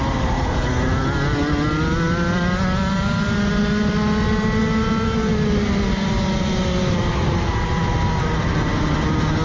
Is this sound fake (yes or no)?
no